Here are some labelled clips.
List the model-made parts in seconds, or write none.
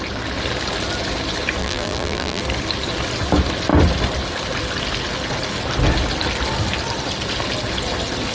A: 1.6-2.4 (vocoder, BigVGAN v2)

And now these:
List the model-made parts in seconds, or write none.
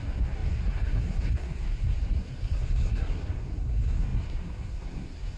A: 0.0-5.4 (codec, SNAC)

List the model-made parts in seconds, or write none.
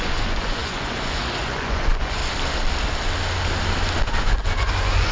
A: 0.0-2.2 (vocoder, Vocos); 4.2-5.1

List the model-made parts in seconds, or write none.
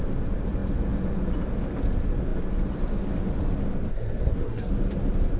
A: 3.9-4.7 (codec, SNAC)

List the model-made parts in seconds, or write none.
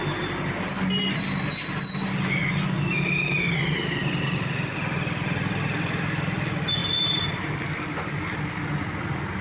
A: none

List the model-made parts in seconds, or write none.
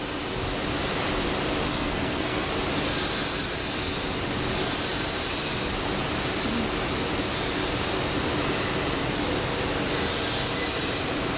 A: 1.7-2.5 (codec, SNAC)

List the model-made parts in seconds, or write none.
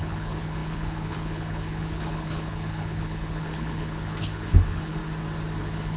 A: 0.0-5.0 (codec, HILCodec); 5.6-6.0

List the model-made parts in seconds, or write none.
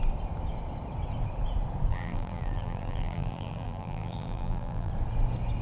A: 1.9-4.9 (vocoder, BigVGAN v2)